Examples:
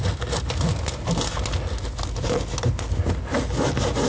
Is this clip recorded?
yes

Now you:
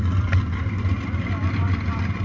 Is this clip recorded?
no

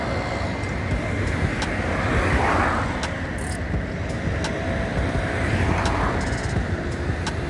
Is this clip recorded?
yes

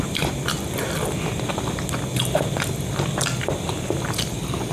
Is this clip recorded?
yes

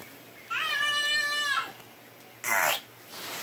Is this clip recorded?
yes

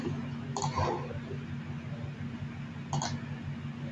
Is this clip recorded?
yes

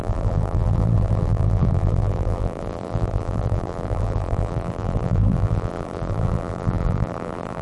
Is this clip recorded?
no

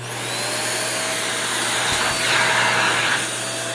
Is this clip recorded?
yes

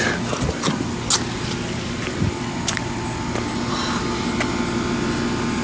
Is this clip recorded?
yes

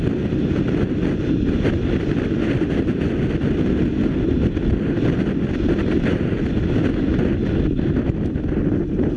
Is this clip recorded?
yes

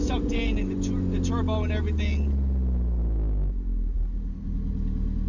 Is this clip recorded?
yes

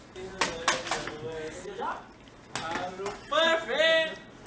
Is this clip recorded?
yes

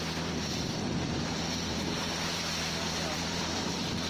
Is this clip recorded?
no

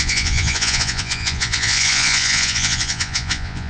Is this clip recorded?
no